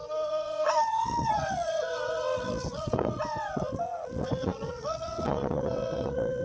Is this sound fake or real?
fake